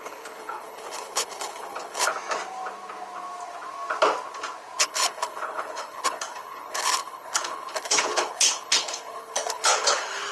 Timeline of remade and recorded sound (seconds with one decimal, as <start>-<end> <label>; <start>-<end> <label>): 0.0-2.1 remade; 2.1-4.8 recorded; 4.8-10.3 remade